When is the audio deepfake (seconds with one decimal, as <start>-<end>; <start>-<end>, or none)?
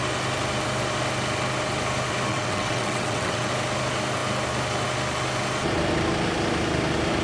2.3-3.5